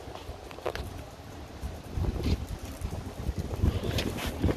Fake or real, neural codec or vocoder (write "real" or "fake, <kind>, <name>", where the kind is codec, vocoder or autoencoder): real